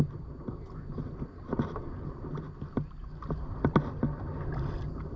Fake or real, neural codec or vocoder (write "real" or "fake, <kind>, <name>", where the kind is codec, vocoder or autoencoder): real